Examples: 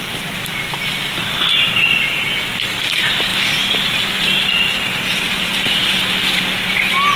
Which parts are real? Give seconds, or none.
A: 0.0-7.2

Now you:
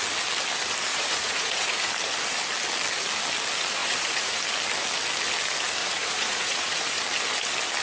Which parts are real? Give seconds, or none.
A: 0.0-0.9; 1.9-3.8; 4.4-5.8; 7.0-7.8

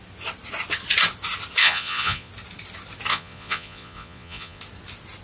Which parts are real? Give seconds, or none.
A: 0.0-1.6; 2.3-3.1; 4.6-5.2

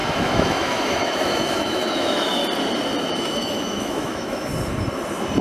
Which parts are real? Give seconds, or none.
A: 2.4-3.1; 4.5-5.4

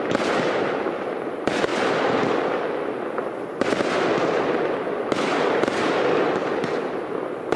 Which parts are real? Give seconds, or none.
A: 0.0-7.6

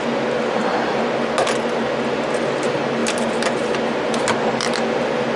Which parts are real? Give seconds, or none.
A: 0.0-5.4